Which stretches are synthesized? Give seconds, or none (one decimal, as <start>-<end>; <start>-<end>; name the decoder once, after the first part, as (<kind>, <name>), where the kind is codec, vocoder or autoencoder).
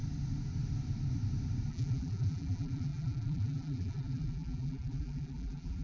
1.7-5.8 (vocoder, BigVGAN v2)